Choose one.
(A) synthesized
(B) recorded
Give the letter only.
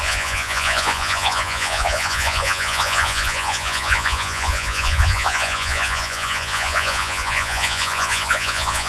A